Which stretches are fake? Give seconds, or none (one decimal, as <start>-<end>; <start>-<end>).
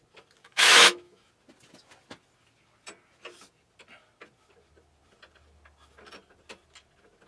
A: 0.4-1.3